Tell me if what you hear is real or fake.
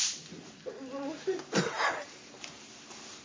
fake